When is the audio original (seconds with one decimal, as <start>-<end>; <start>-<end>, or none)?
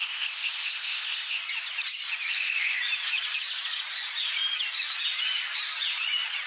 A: 1.4-2.3; 2.8-6.5